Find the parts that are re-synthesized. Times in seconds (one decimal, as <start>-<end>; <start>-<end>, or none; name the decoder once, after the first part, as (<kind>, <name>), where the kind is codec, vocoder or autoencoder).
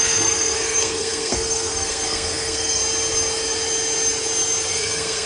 0.0-2.8 (codec, SNAC); 4.7-5.3